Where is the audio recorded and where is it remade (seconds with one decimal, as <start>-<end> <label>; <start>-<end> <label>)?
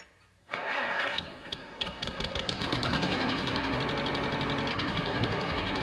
0.0-0.4 recorded; 0.4-3.8 remade; 3.8-4.7 recorded; 4.7-5.8 remade